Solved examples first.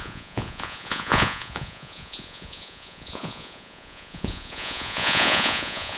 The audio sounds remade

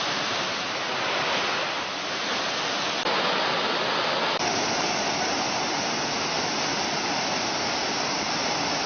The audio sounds recorded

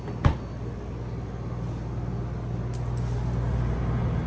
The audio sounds recorded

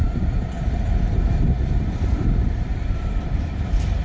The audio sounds remade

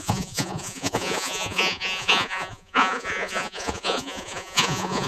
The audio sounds remade